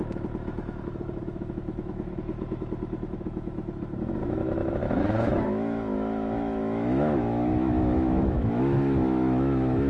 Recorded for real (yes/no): no